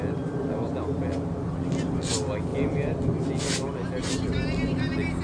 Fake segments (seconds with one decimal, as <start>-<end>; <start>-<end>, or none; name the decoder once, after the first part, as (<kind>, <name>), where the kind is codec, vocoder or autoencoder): none